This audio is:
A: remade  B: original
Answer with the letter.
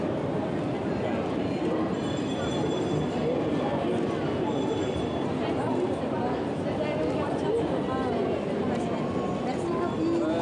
B